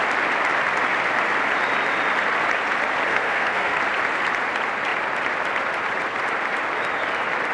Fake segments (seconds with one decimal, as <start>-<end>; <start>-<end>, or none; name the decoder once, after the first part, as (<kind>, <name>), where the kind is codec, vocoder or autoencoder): 3.1-3.8 (codec, SNAC)